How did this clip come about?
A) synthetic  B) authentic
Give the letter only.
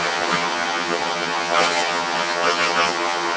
A